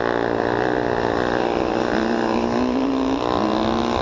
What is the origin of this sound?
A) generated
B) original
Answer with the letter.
B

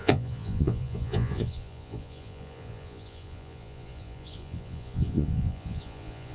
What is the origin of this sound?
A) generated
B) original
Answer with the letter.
A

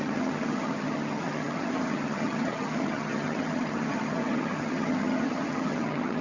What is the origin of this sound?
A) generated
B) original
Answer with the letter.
A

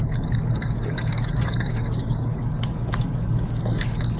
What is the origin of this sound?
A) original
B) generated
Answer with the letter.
B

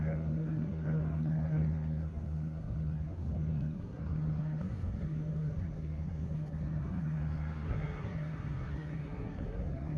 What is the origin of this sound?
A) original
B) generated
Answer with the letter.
B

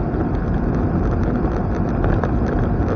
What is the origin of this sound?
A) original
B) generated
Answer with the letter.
A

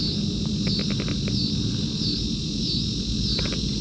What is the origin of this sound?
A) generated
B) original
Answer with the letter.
B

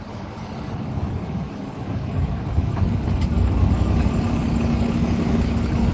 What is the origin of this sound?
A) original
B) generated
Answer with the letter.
B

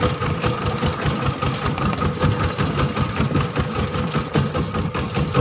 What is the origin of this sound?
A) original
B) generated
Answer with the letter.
A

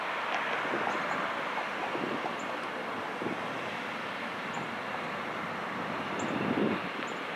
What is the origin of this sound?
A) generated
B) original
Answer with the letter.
B